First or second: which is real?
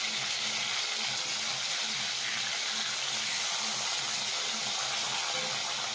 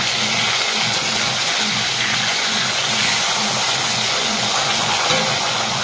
first